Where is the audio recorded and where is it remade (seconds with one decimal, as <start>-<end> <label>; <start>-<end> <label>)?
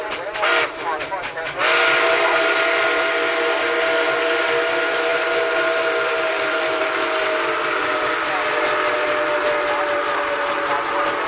0.0-11.3 recorded